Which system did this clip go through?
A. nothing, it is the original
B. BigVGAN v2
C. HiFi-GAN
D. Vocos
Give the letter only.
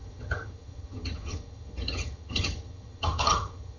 C